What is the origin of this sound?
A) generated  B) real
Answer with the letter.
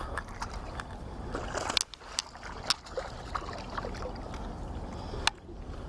B